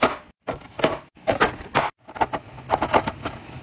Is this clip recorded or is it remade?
recorded